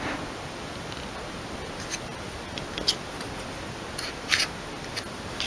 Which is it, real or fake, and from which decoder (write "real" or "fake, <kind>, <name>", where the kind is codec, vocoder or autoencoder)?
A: real